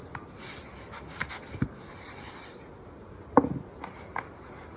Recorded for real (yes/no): yes